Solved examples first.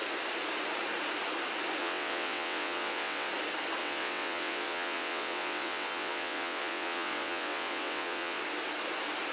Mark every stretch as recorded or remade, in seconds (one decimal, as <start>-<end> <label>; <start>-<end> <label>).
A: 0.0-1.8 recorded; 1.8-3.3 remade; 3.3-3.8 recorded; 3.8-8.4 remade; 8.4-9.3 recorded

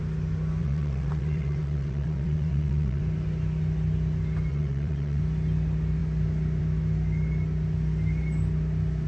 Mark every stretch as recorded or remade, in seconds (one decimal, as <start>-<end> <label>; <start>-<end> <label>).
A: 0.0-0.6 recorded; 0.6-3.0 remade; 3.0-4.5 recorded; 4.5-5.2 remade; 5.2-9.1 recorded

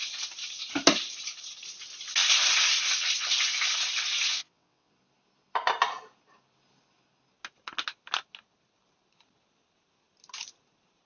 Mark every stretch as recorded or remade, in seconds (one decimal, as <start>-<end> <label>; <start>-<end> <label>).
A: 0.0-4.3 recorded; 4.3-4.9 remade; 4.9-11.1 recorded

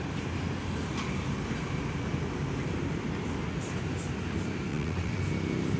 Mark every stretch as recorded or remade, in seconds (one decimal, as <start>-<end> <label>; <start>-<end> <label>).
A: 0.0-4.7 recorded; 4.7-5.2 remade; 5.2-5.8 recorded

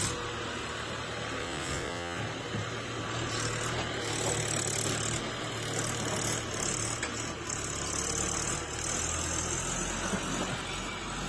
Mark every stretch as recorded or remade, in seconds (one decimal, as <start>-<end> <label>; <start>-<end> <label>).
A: 0.0-1.4 recorded; 1.4-2.2 remade; 2.2-11.3 recorded

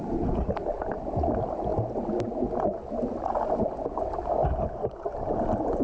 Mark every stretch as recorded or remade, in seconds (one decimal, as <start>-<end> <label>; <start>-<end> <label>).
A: 0.0-5.8 recorded

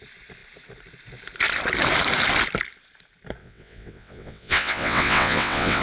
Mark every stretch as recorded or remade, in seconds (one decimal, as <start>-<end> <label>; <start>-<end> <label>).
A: 0.0-3.4 recorded; 3.4-5.8 remade